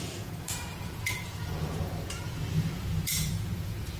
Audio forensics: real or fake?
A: fake